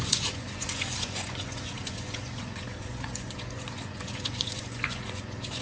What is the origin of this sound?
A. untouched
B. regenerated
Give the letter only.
B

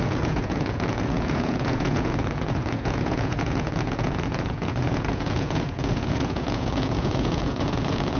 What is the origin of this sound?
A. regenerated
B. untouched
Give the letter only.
A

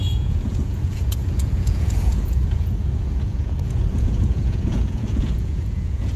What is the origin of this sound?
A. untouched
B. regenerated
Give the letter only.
B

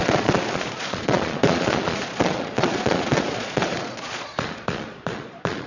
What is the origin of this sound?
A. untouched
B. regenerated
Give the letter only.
B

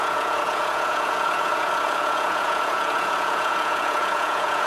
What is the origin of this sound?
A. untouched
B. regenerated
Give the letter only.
B